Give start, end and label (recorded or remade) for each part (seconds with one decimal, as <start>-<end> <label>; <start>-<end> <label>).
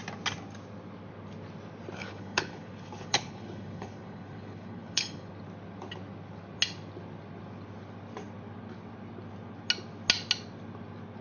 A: 0.0-2.0 recorded; 2.0-5.3 remade; 5.3-11.2 recorded